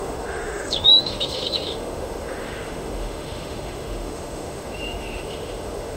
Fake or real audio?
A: fake